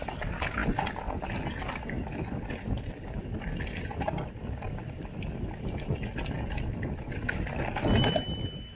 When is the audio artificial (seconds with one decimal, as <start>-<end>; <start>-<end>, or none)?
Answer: none